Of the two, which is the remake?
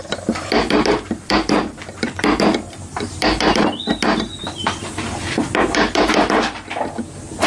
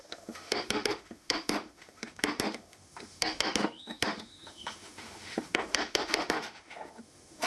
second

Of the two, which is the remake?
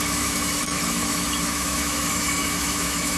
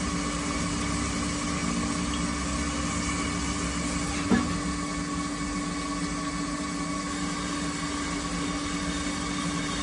first